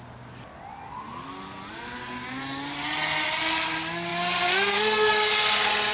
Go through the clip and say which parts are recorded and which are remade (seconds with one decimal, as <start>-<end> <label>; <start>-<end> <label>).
0.0-5.9 recorded